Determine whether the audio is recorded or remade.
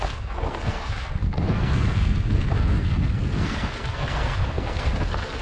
remade